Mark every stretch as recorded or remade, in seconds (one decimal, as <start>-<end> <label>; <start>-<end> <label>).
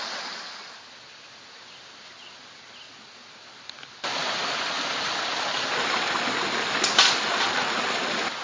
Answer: 0.0-8.4 recorded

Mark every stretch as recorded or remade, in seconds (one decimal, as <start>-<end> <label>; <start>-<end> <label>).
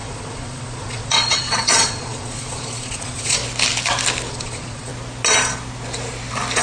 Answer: 0.0-3.4 remade; 3.4-4.3 recorded; 4.3-4.9 remade; 4.9-6.6 recorded